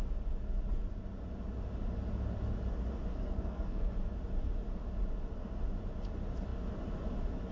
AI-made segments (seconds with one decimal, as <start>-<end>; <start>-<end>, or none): 3.1-3.9